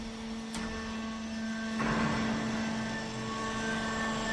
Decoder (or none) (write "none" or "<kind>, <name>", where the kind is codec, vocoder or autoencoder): none